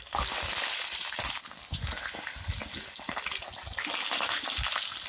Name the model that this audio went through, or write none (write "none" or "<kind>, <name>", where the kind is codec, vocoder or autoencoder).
none